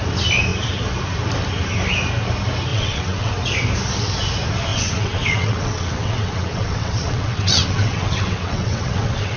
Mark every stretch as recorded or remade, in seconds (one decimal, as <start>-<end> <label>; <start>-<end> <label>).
0.0-2.7 recorded; 2.7-3.3 remade; 3.3-4.7 recorded; 4.7-9.4 remade